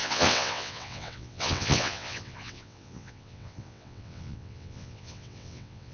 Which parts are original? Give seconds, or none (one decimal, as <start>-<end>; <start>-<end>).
none